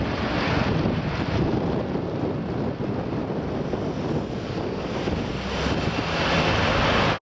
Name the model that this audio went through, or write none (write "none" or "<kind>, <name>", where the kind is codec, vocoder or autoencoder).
none